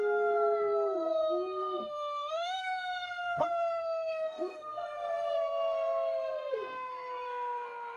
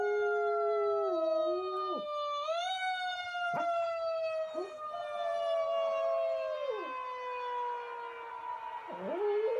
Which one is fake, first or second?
first